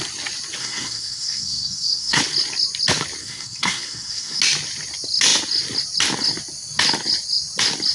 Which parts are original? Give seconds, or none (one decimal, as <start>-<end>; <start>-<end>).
0.0-0.6; 2.2-3.2; 4.4-7.9